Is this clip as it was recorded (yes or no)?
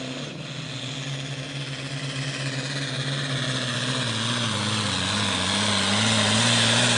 yes